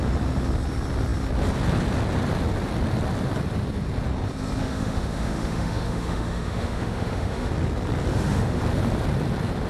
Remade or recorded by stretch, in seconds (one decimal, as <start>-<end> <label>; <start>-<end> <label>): 0.0-4.6 recorded; 4.6-7.5 remade; 7.5-8.1 recorded; 8.1-8.6 remade; 8.6-9.7 recorded